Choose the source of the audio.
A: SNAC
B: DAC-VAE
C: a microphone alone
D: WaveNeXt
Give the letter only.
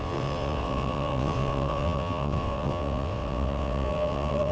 D